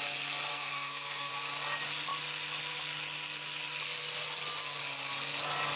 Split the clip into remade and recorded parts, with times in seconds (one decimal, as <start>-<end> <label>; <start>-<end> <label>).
0.0-0.5 recorded; 0.5-1.3 remade; 1.3-5.8 recorded